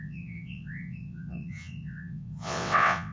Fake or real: fake